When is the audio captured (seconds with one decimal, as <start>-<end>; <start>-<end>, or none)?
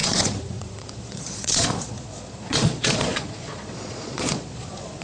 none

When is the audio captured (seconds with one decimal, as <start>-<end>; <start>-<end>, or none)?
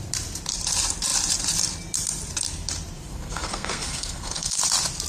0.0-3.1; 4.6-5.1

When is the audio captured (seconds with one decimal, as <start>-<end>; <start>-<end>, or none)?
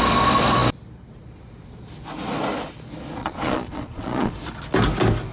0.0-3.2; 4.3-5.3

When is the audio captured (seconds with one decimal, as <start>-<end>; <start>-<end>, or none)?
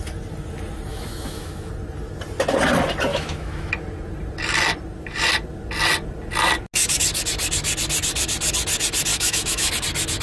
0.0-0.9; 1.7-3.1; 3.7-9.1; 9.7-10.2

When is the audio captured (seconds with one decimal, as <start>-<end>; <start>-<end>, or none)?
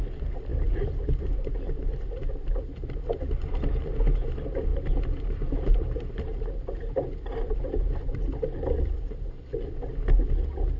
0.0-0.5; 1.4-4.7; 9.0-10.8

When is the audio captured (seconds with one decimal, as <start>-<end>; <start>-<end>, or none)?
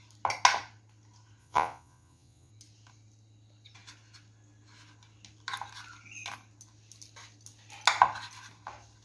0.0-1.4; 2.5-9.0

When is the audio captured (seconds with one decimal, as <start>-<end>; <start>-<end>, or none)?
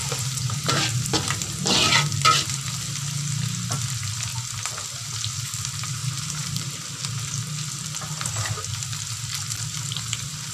0.8-6.0; 6.7-10.5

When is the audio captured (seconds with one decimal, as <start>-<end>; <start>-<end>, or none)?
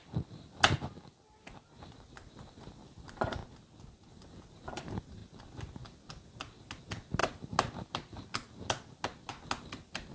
0.0-10.1